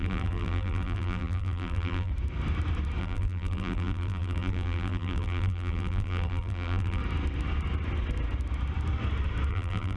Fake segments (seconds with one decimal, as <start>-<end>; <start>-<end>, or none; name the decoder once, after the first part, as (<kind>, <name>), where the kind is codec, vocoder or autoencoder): 0.0-2.1 (vocoder, BigVGAN v2); 3.0-7.0; 9.5-10.0